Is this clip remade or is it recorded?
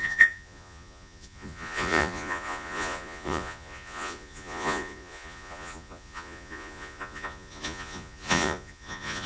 remade